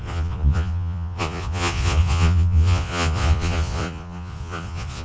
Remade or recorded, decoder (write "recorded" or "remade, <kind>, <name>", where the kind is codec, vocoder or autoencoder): remade, vocoder, Vocos